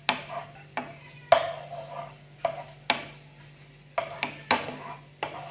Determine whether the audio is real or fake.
real